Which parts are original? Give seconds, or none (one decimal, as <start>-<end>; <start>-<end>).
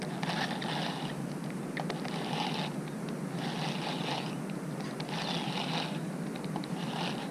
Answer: 0.0-7.3